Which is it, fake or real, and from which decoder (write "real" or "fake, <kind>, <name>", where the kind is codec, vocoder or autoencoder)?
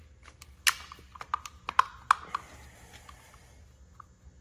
real